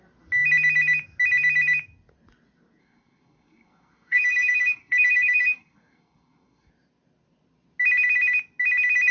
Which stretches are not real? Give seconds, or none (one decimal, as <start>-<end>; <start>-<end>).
2.8-6.7

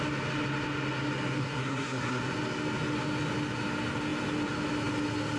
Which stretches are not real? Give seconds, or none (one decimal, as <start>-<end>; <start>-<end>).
1.4-2.2

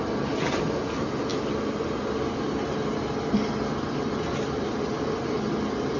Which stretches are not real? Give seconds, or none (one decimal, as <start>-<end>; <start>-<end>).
none

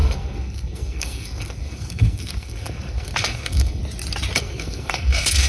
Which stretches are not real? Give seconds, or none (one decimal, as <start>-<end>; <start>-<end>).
0.0-3.8; 4.4-5.5

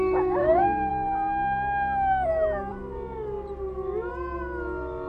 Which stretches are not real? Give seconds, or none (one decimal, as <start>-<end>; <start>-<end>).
0.4-0.9

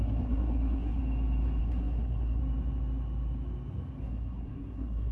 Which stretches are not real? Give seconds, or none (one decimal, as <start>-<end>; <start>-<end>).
0.0-1.0; 1.6-2.4; 4.0-5.1

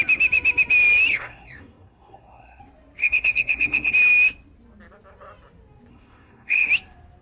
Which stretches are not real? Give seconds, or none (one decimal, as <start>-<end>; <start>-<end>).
1.1-2.6; 3.0-3.9; 5.9-6.7

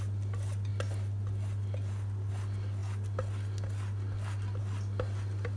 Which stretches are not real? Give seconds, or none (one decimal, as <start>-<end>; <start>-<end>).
none